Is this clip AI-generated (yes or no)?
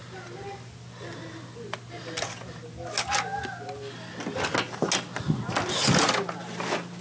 no